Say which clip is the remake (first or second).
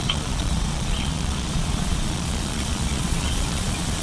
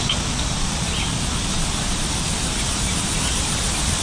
first